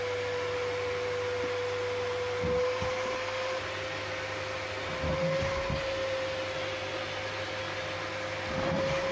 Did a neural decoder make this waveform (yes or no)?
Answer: yes